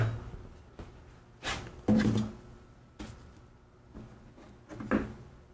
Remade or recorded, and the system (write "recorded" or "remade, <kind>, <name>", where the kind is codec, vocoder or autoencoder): recorded